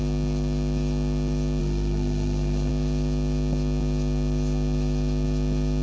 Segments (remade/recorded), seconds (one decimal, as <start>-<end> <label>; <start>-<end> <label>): 0.0-1.6 recorded; 1.6-2.7 remade; 2.7-5.8 recorded